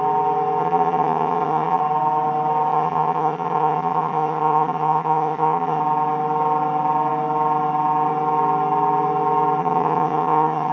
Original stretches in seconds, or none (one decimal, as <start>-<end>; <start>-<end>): 0.0-0.6; 1.8-2.7; 5.8-9.6